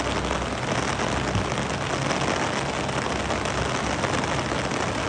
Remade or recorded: recorded